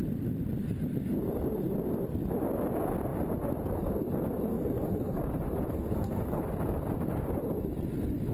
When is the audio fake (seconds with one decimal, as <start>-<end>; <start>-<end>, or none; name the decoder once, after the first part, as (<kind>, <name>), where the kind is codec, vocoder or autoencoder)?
4.5-5.2 (codec, SNAC); 5.7-6.4

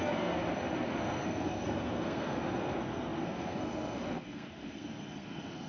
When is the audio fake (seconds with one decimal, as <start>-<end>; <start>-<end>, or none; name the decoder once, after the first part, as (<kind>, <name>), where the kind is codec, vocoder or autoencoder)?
0.0-0.4 (codec, SNAC); 1.0-5.7

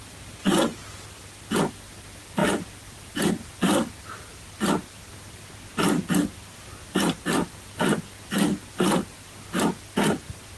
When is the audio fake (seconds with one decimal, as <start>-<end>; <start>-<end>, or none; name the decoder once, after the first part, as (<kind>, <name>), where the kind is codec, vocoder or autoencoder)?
none